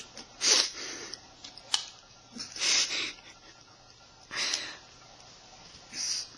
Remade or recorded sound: recorded